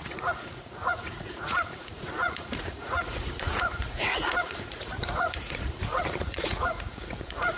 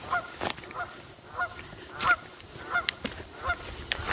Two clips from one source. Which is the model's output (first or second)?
first